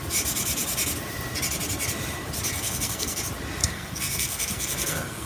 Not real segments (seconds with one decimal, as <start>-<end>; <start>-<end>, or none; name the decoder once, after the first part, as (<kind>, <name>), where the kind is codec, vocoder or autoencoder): 2.5-3.2 (codec, SNAC); 3.6-5.3